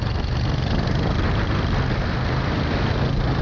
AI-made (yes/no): no